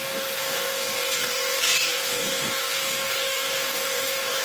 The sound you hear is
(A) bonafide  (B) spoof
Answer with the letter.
B